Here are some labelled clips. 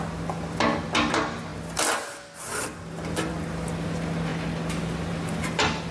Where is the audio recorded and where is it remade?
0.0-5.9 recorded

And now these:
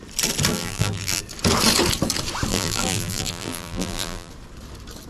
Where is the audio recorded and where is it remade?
0.0-0.5 recorded; 0.5-1.2 remade; 1.2-2.5 recorded; 2.5-4.3 remade; 4.3-5.1 recorded

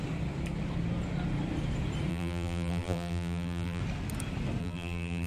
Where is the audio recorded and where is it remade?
0.0-2.1 recorded; 2.1-3.8 remade; 3.8-4.6 recorded; 4.6-5.3 remade

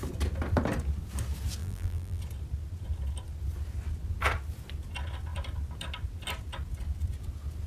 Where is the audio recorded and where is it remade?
0.0-1.6 recorded; 1.6-2.2 remade; 2.2-7.7 recorded